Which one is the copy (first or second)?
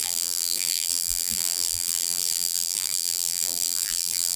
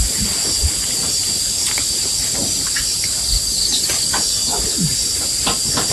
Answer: first